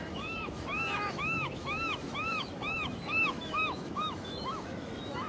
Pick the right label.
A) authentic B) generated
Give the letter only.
B